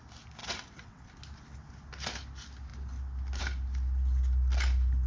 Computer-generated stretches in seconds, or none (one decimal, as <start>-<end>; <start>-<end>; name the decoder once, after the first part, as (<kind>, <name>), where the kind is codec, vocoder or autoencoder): 0.4-1.1 (vocoder, WaveNeXt)